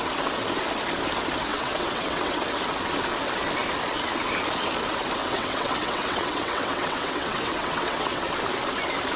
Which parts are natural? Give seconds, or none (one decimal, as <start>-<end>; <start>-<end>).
0.0-1.5; 2.4-5.2; 8.3-9.2